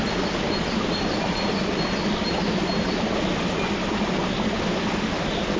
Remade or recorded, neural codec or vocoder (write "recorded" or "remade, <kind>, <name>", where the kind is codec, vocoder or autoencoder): recorded